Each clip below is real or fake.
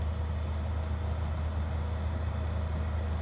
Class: real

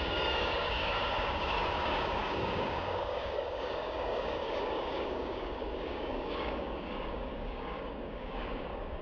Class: fake